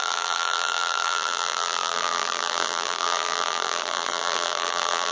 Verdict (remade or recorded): remade